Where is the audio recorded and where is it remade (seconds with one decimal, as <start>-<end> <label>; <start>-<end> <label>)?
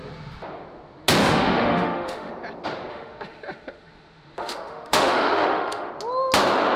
0.0-1.2 recorded; 1.2-2.3 remade; 2.3-2.9 recorded; 2.9-5.9 remade; 5.9-6.8 recorded